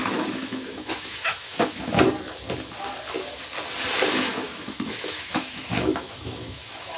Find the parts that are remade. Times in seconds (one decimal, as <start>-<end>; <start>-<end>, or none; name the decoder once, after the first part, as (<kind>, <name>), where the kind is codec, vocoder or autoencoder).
0.0-2.0 (autoencoder, DAC-VAE); 4.3-7.0